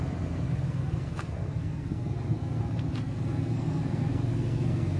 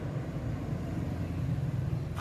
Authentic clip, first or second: second